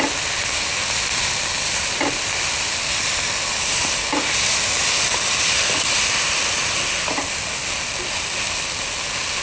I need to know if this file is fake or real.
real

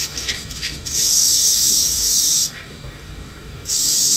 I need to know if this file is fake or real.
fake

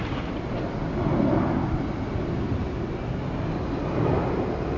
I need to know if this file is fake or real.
real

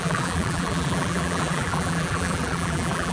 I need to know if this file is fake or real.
fake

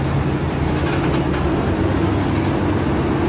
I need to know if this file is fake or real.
real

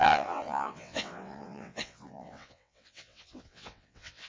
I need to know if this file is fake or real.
fake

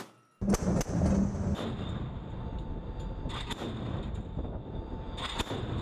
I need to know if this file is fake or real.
real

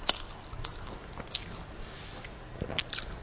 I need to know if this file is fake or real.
real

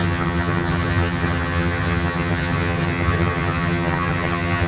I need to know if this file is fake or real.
fake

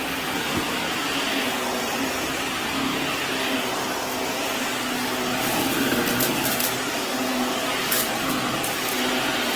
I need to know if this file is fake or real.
real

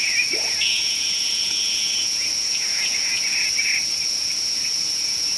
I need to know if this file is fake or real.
fake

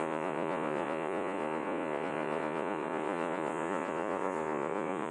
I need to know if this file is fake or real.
fake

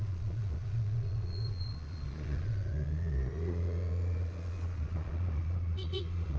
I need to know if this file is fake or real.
fake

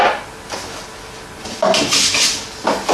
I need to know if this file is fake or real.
real